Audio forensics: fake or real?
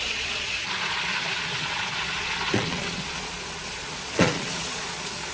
fake